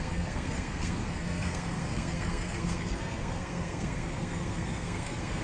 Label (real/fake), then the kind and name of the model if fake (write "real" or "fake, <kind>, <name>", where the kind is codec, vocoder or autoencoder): fake, codec, SNAC